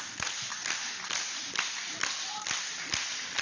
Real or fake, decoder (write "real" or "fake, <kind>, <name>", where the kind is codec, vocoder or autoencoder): fake, vocoder, BigVGAN v2